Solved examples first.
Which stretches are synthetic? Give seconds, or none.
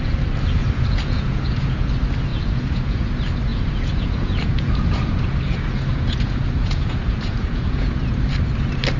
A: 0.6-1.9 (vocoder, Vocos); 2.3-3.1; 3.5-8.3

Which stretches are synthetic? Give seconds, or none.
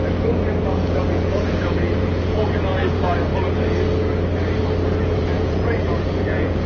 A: 0.8-3.3 (vocoder, Vocos); 5.0-6.7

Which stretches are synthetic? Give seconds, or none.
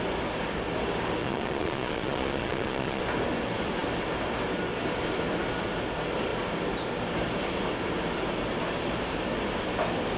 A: 1.2-3.0 (vocoder, Vocos)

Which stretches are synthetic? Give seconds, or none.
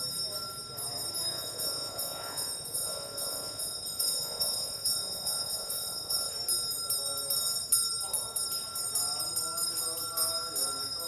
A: 1.3-6.3 (vocoder, Vocos)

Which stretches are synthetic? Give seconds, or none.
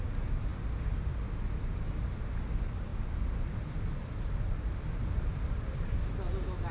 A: none